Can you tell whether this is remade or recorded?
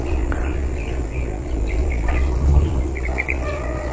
remade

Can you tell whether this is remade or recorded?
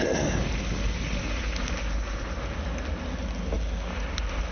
recorded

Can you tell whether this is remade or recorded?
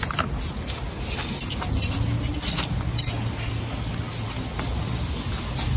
recorded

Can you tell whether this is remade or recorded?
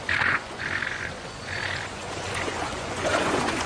remade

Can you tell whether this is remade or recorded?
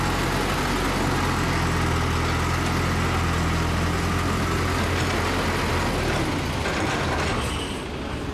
recorded